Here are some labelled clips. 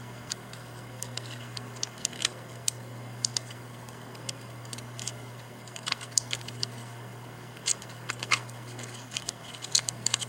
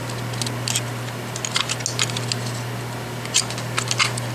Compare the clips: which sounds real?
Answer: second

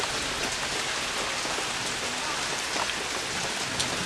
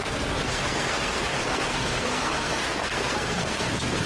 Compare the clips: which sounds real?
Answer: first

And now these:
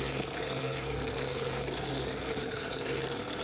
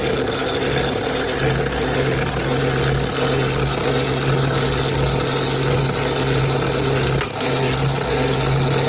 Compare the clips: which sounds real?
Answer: second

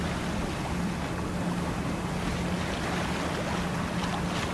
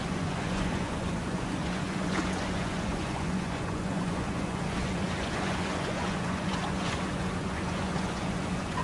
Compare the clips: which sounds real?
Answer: first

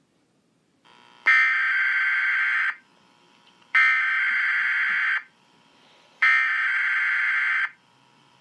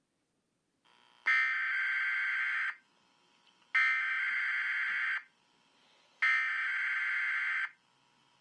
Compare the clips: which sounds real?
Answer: second